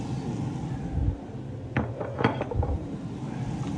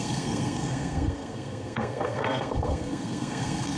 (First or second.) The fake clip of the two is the second